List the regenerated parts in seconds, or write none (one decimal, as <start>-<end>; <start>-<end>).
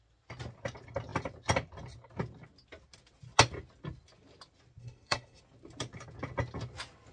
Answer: 4.8-5.4